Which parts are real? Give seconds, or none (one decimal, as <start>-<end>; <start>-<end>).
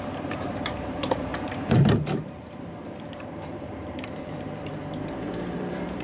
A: none